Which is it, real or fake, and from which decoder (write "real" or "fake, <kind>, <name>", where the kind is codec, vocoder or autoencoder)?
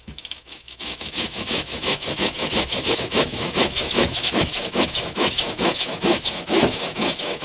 fake, autoencoder, DAC-VAE